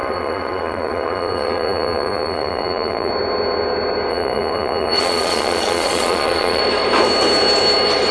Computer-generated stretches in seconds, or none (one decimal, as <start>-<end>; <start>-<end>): 0.0-3.1; 4.1-6.6